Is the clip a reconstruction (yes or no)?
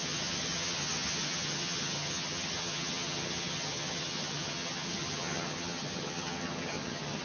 yes